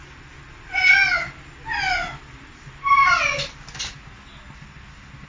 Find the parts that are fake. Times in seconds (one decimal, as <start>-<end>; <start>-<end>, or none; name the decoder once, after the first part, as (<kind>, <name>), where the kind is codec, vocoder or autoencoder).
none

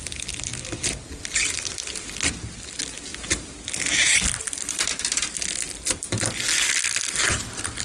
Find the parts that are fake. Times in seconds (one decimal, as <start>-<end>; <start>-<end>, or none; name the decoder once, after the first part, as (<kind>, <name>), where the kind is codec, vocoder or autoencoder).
3.1-5.0 (vocoder, BigVGAN v2)

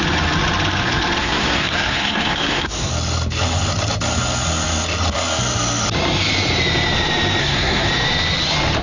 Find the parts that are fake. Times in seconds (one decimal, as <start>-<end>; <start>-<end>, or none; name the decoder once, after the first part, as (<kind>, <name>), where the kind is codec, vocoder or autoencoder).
1.2-2.9 (codec, SNAC); 7.4-7.9

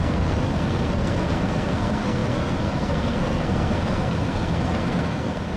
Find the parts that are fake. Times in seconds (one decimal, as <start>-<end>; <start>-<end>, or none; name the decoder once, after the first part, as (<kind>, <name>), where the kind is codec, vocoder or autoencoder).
0.0-5.6 (codec, SNAC)

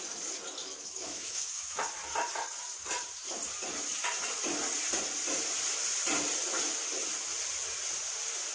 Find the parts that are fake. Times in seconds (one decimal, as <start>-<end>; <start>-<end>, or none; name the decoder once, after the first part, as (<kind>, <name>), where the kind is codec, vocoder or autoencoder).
0.6-1.8 (autoencoder, DAC-VAE)

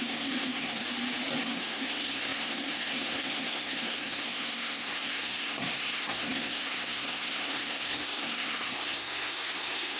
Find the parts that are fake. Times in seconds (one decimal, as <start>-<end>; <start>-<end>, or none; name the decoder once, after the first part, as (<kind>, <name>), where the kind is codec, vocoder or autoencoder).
0.0-0.8 (codec, SNAC); 1.4-10.0

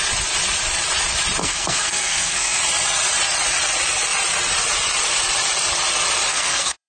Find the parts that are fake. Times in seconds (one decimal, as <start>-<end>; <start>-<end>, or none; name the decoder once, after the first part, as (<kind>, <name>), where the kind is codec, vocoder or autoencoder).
1.4-2.6 (codec, SNAC); 6.3-6.9